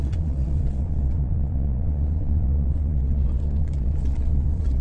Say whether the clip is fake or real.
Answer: fake